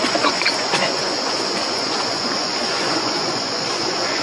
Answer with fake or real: fake